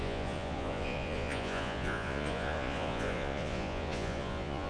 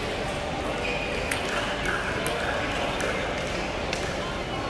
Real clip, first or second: second